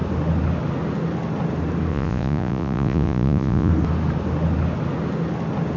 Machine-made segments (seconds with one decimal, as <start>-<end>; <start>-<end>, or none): 1.9-3.7